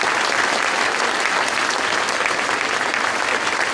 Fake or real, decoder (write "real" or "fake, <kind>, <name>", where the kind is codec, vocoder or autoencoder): real